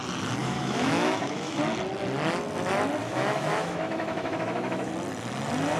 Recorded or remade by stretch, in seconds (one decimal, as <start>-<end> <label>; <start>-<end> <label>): 0.0-0.4 recorded; 0.4-1.6 remade; 1.6-3.0 recorded; 3.0-4.9 remade; 4.9-5.8 recorded